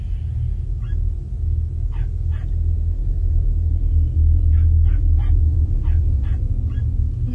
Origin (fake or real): real